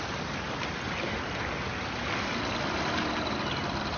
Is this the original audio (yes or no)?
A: yes